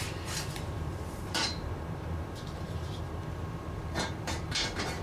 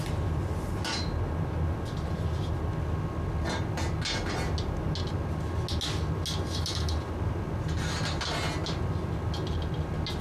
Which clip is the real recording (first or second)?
second